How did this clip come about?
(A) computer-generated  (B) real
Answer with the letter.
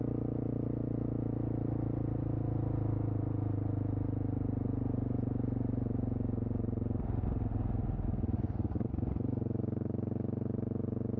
B